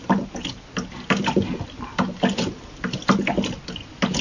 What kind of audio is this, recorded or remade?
recorded